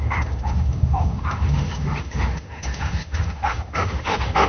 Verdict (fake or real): fake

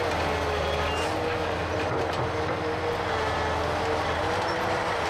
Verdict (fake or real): real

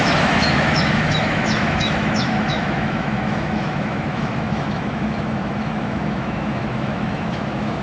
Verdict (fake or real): fake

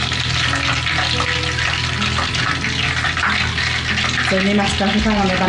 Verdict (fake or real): real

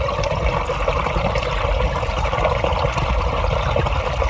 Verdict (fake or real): real